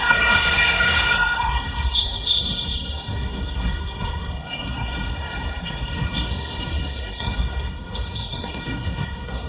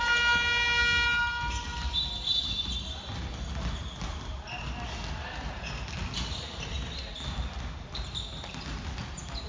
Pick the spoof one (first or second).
first